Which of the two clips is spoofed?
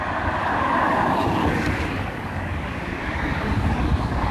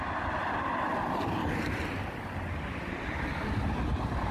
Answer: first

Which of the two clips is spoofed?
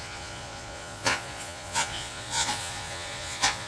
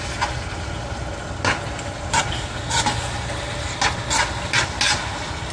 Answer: first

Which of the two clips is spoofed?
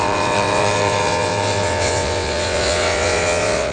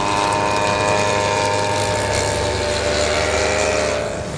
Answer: first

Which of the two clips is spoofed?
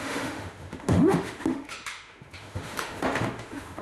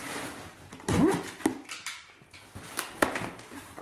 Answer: first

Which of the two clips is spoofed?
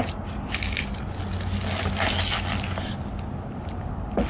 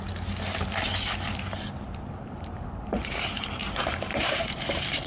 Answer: second